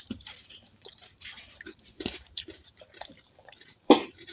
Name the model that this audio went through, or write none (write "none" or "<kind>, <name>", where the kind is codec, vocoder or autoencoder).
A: vocoder, BigVGAN v2